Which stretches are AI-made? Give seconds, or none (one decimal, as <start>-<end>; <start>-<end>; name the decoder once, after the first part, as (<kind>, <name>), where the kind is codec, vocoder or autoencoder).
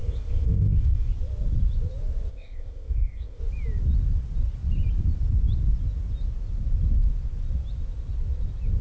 0.0-1.1 (codec, ZipCodec); 2.3-3.4